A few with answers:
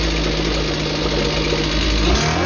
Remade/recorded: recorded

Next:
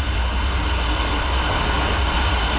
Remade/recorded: recorded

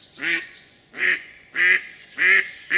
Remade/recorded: remade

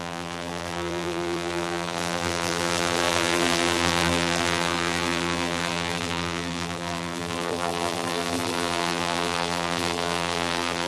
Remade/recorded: remade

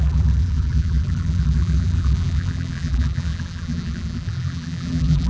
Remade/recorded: remade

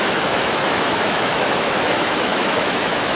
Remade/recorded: remade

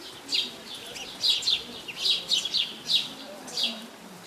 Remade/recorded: recorded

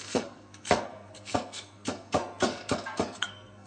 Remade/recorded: remade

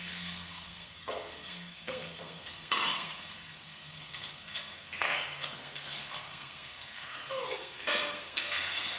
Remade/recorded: remade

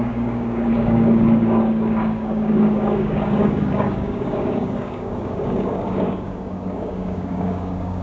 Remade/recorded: remade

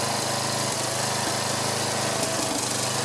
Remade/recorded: remade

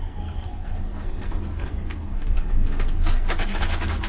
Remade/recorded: remade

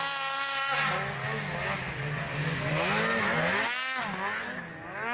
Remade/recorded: recorded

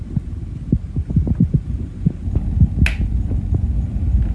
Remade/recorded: recorded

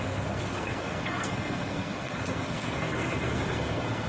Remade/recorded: remade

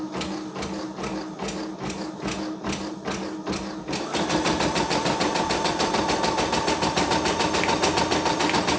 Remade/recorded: recorded